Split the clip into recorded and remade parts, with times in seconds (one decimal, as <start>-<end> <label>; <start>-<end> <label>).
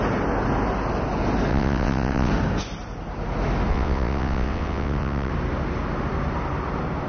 0.0-1.5 recorded; 1.5-2.3 remade; 2.3-3.7 recorded; 3.7-5.3 remade; 5.3-7.1 recorded